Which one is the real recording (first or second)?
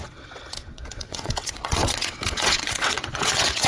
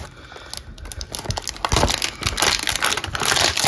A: second